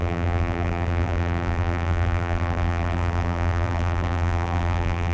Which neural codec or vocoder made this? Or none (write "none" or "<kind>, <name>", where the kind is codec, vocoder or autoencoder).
vocoder, BigVGAN v2